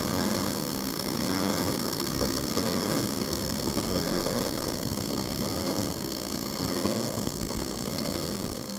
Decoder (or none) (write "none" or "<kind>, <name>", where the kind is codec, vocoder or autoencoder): codec, SNAC